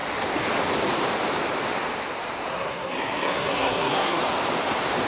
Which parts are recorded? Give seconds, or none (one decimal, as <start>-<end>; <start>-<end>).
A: 0.0-2.5; 4.2-5.1

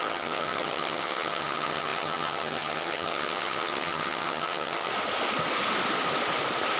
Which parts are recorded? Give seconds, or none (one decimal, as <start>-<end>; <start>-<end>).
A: 4.9-6.8